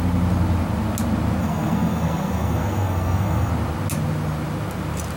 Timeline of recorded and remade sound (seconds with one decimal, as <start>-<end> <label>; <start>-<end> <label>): 0.0-1.4 recorded; 1.4-3.5 remade; 3.5-5.2 recorded